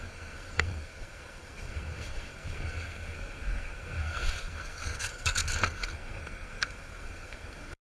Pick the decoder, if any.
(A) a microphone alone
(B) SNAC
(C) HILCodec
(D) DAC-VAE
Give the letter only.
B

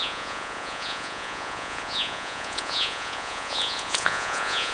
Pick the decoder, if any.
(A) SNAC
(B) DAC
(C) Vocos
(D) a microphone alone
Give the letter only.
C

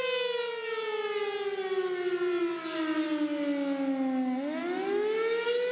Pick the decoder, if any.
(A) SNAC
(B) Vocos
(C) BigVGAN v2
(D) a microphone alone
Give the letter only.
D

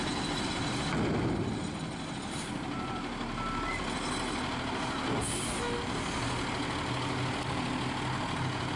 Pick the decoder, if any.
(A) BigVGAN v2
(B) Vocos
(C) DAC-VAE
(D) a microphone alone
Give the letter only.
D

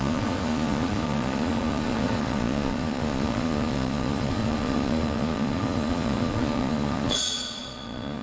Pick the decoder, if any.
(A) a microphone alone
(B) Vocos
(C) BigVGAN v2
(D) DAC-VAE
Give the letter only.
B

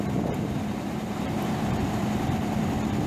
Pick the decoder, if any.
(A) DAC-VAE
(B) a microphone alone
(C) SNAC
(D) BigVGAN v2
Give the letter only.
D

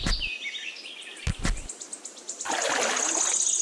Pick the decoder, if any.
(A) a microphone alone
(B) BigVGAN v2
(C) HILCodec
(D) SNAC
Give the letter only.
A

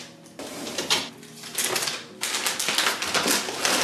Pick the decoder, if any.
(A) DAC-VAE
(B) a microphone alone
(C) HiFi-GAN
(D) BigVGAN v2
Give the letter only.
B